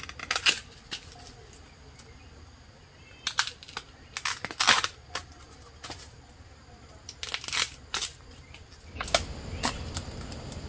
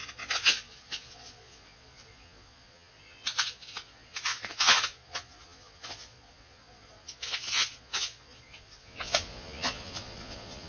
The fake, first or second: second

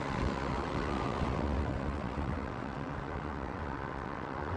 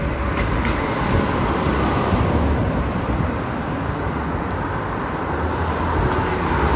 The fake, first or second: first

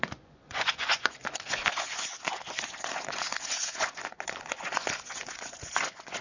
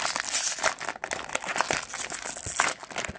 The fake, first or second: first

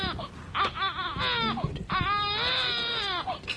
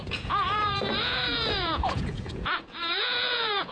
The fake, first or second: second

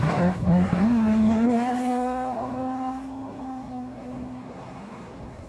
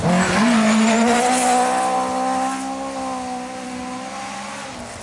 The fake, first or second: first